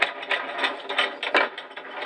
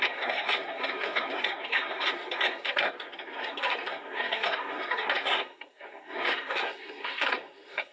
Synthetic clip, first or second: second